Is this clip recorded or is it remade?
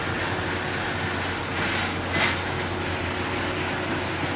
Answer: recorded